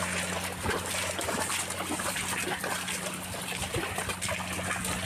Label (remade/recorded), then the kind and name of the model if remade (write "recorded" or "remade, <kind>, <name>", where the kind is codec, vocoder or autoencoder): recorded